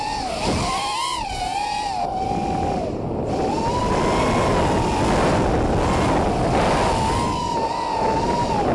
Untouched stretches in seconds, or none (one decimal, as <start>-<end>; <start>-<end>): 0.0-1.5; 2.2-8.7